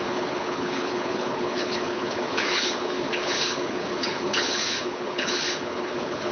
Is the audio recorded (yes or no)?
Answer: no